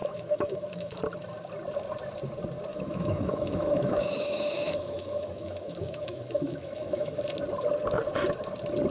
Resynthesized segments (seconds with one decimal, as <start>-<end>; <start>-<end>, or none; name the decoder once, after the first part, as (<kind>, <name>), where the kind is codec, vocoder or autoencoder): 0.0-1.0 (autoencoder, DAC-VAE); 2.7-7.2